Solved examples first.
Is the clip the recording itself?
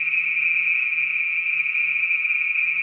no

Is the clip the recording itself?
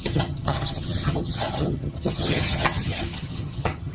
no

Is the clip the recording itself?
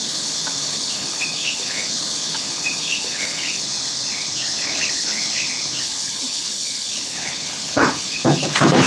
no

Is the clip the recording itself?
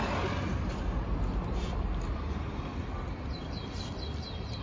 yes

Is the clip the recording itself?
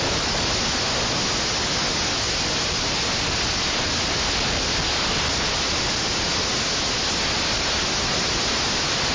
yes